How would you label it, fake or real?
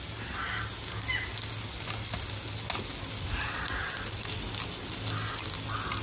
real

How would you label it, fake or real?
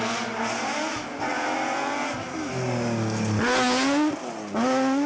real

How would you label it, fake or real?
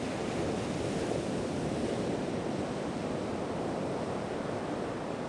real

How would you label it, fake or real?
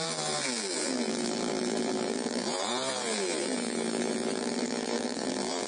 fake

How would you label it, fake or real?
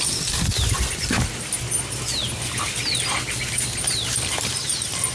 real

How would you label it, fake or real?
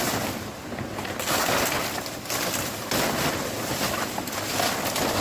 real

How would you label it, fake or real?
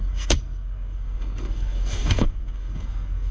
fake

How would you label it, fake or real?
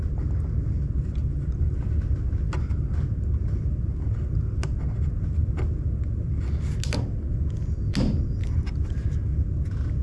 real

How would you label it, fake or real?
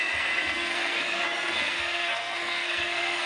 fake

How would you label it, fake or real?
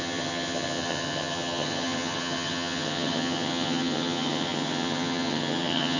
fake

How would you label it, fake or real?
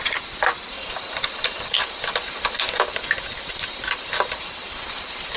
real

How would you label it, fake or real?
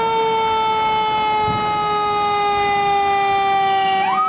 real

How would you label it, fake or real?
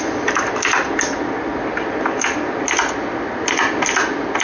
real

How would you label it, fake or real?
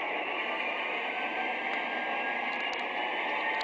real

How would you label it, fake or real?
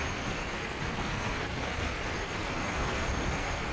fake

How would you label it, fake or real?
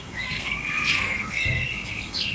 fake